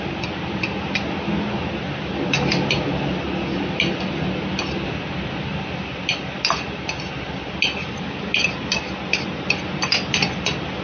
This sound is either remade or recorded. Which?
recorded